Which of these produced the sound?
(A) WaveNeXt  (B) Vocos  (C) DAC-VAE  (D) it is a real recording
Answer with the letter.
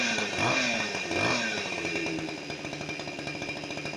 D